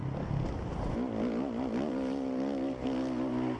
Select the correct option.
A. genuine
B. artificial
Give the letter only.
A